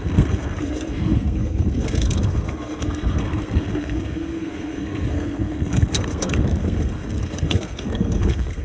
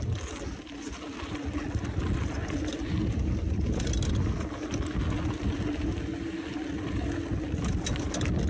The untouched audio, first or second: second